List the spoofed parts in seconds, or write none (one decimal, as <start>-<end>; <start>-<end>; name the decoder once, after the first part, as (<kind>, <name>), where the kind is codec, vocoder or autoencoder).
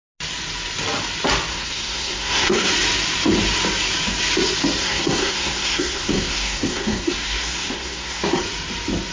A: 1.5-2.7 (codec, SNAC); 4.8-8.4